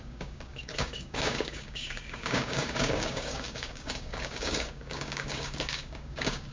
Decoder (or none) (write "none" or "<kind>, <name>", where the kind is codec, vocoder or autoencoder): codec, DAC